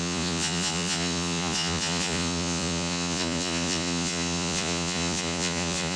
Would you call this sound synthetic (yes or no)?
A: yes